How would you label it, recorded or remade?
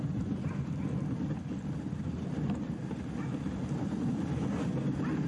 recorded